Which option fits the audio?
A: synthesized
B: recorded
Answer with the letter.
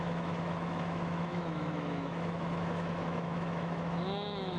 A